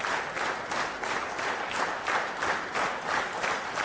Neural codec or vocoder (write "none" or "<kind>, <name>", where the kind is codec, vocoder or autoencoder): none